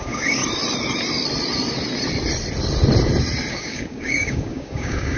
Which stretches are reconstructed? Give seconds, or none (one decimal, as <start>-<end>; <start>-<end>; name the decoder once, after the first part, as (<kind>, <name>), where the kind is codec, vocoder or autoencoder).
0.0-0.4 (codec, DAC); 3.5-5.2